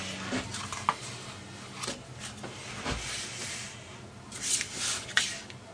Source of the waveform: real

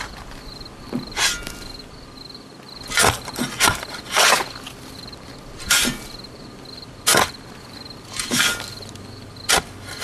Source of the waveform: real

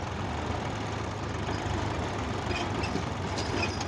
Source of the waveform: real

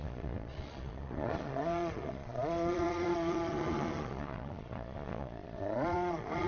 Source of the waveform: fake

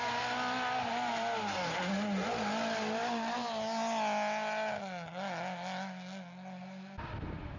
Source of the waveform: real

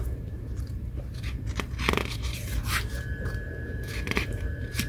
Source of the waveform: fake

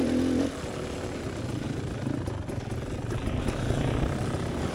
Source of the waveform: real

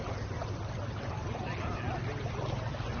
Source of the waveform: real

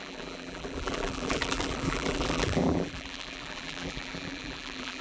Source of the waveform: fake